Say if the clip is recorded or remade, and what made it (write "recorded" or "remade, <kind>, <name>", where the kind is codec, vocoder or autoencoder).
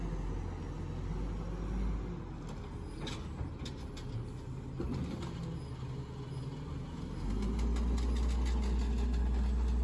recorded